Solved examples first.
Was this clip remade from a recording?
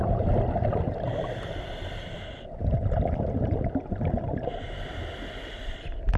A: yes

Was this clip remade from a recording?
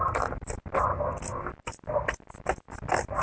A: no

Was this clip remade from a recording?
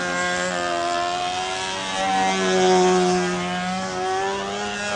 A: no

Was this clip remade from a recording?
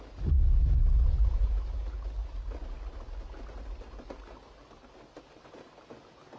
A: no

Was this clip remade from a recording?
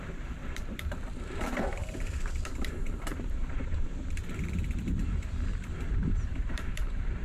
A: yes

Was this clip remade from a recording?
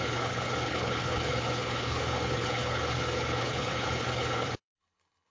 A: yes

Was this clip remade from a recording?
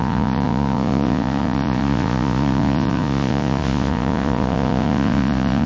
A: yes